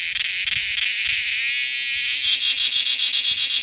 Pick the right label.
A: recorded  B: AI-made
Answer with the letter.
A